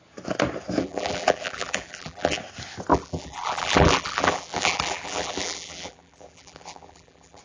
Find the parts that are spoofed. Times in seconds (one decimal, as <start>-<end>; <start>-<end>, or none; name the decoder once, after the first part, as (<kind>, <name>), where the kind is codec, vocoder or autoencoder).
0.8-2.4 (vocoder, BigVGAN v2); 2.9-7.4